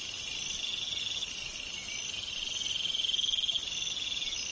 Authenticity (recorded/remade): recorded